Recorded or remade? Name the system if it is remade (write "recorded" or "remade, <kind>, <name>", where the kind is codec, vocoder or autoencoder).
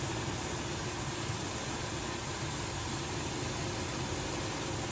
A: recorded